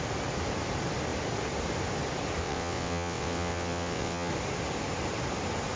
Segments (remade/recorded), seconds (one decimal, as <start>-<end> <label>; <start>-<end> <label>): 0.0-2.4 recorded; 2.4-4.3 remade; 4.3-5.8 recorded